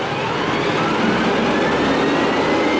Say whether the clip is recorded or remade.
recorded